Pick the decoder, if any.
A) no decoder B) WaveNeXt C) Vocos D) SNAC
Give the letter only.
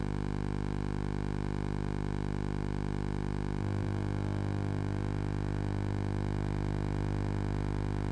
A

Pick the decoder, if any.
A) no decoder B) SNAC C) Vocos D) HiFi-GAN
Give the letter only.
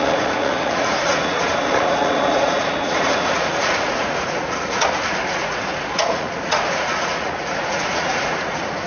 C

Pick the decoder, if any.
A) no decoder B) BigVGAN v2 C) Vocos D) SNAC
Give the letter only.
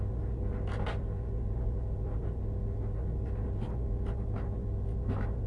A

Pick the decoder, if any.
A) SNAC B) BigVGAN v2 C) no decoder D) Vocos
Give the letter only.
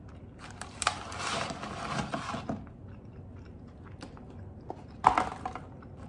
C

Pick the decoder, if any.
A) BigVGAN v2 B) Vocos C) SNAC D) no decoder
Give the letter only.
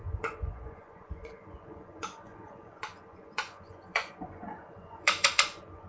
B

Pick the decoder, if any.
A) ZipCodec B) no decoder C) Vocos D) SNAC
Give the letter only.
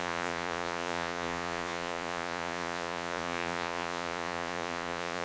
C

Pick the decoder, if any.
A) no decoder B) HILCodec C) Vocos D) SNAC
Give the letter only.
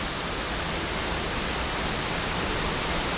A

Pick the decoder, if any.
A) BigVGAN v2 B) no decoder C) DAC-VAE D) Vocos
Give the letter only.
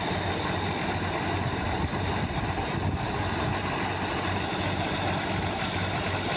B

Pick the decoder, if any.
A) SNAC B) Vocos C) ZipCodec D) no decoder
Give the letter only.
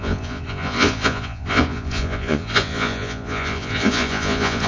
B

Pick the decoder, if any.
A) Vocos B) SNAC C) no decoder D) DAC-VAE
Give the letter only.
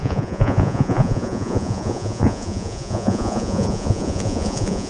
A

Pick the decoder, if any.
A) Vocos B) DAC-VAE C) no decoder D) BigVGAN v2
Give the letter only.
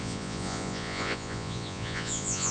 A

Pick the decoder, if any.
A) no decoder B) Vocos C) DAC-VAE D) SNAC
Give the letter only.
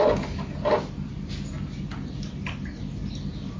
A